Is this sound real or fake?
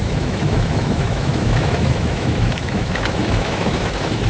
fake